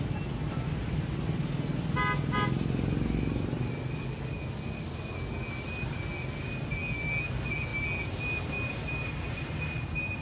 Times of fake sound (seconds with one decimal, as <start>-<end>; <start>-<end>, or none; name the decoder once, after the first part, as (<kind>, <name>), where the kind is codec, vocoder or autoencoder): none

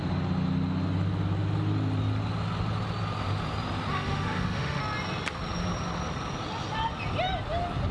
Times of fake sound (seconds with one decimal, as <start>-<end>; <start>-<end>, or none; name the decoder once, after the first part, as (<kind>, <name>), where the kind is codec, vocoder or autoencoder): 3.9-4.8 (autoencoder, DAC-VAE)

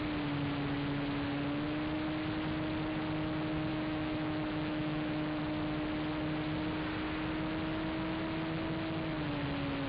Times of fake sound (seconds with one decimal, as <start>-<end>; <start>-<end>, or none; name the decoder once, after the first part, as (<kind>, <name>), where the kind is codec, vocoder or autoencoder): 3.7-5.4 (autoencoder, DAC-VAE)

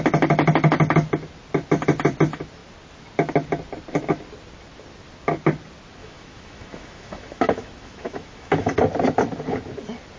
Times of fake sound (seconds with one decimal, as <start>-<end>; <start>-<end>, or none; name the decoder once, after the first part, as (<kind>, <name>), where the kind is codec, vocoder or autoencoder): 6.0-8.8 (autoencoder, DAC-VAE)

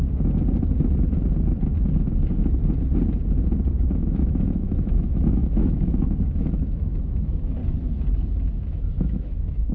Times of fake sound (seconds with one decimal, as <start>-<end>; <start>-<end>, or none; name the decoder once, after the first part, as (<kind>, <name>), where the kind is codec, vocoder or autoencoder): 3.7-7.6 (autoencoder, DAC-VAE); 8.7-9.7